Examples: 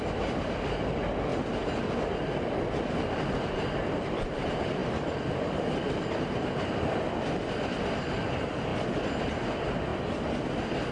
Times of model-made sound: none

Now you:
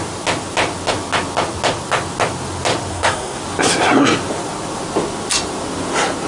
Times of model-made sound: 2.9-3.4 (codec, SNAC)